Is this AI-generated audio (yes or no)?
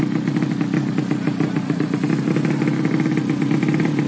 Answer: no